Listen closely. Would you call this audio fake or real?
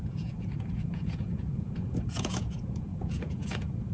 fake